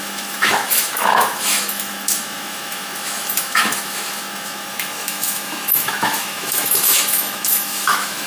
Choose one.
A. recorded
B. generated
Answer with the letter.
B